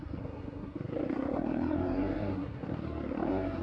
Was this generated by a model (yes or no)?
yes